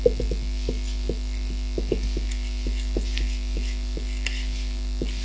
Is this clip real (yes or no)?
yes